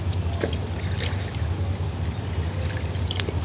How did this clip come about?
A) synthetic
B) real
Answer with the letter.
A